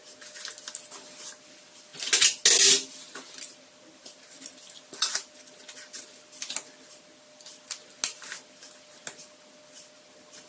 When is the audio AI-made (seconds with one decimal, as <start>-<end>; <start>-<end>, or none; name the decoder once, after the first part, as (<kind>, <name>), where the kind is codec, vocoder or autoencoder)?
none